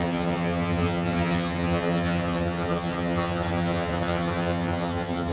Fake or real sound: fake